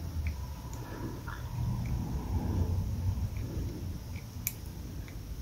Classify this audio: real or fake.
real